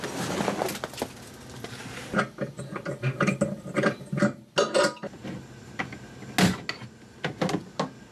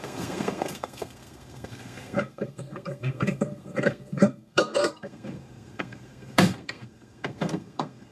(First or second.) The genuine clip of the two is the first